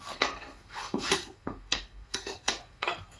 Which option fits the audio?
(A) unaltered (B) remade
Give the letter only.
B